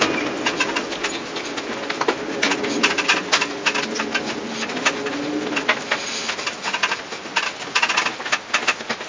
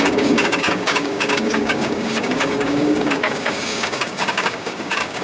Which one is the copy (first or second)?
second